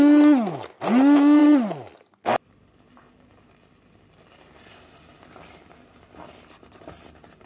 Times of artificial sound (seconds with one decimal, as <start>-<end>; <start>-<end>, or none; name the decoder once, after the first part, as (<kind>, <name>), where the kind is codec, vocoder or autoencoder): none